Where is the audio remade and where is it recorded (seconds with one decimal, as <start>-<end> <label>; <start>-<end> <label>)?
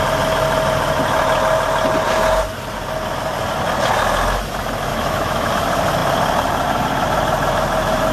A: 0.0-4.9 recorded; 4.9-5.5 remade; 5.5-8.1 recorded